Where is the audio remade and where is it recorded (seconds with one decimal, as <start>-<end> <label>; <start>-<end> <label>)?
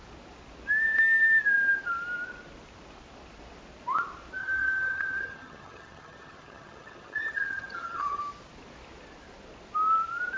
0.0-4.4 recorded; 4.4-8.2 remade; 8.2-10.4 recorded